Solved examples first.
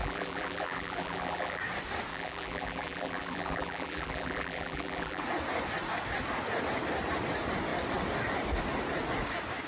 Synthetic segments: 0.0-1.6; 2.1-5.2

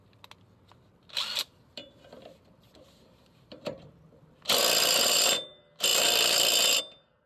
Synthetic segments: 1.4-4.6; 5.9-6.8

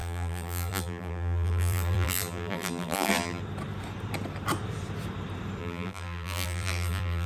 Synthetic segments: 0.0-3.4; 5.6-7.3

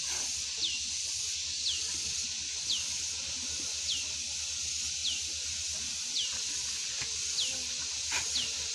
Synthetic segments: none

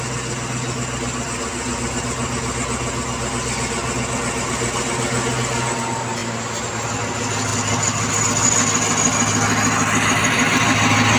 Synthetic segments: none

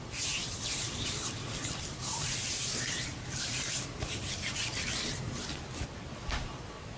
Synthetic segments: 0.0-7.0

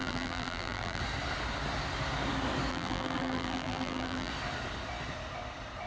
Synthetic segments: 0.0-1.0; 2.7-4.3